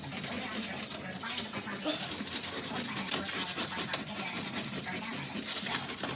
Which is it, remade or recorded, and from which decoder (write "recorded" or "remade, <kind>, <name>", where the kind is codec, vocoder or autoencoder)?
recorded